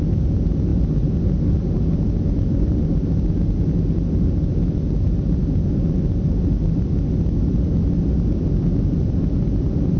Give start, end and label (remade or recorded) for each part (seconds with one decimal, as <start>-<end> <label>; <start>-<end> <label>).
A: 0.0-10.0 recorded